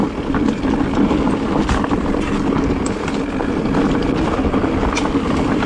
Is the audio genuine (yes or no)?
yes